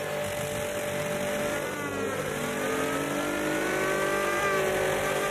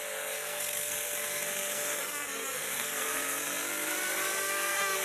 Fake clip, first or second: second